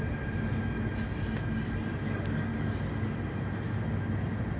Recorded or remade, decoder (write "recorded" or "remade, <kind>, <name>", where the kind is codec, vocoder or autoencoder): recorded